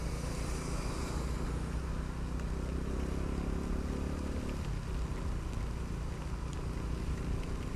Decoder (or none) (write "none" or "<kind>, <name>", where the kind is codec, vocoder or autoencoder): none